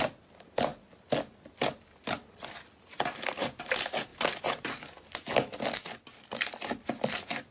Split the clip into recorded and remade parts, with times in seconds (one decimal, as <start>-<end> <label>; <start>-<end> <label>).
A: 0.0-7.5 recorded